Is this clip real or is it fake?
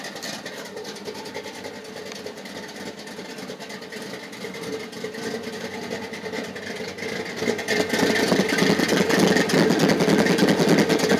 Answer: real